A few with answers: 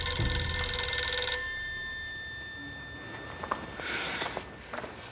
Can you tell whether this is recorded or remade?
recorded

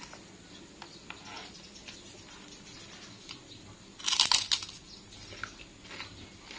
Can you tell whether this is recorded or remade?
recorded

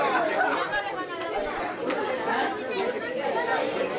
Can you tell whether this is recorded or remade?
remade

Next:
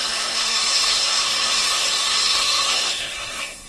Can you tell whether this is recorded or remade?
remade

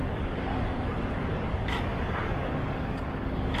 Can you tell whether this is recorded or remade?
remade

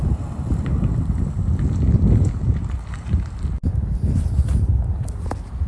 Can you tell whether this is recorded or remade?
recorded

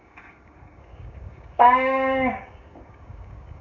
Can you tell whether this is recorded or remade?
remade